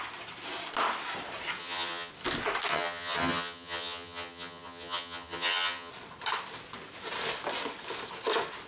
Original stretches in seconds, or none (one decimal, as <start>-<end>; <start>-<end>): 0.0-1.6; 2.1-2.7; 5.9-8.7